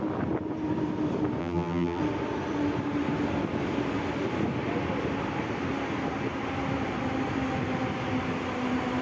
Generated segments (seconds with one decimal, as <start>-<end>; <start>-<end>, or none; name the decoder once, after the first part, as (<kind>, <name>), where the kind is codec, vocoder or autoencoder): 1.4-2.0 (vocoder, BigVGAN v2)